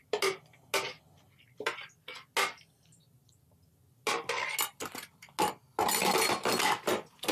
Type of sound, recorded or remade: recorded